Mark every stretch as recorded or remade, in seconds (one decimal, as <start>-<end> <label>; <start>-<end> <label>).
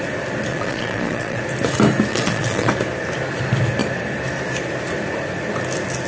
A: 0.0-0.5 recorded; 0.5-1.4 remade; 1.4-2.1 recorded; 2.1-2.7 remade; 2.7-6.1 recorded